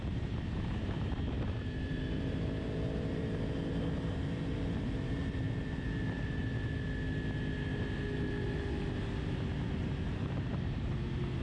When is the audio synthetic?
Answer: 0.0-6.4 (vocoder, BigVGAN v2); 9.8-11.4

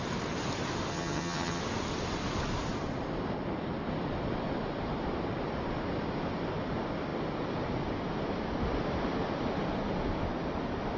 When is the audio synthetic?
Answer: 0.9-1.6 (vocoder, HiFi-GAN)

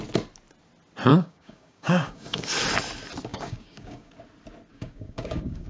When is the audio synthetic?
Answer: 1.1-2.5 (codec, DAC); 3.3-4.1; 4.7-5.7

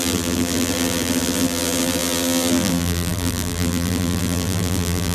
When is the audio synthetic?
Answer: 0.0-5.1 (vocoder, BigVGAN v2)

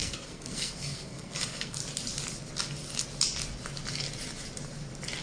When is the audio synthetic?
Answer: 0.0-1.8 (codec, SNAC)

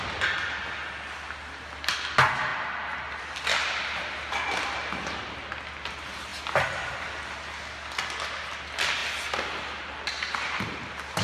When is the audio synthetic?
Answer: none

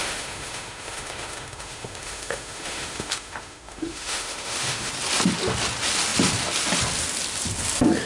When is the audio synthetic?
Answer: 0.0-4.9 (autoencoder, DAC-VAE)